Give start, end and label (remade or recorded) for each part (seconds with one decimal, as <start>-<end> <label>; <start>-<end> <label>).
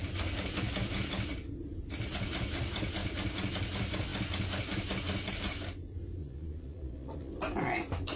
0.0-6.2 recorded; 6.2-7.3 remade; 7.3-8.2 recorded